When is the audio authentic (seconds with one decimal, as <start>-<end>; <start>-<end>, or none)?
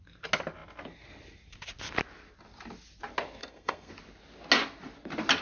0.0-3.4; 3.9-5.4